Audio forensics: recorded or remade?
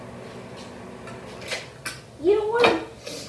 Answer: recorded